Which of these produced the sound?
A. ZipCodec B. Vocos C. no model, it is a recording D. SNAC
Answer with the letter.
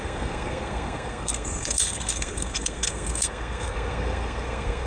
D